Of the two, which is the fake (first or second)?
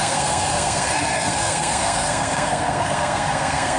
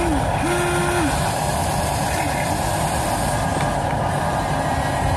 first